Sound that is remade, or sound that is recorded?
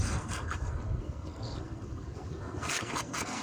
remade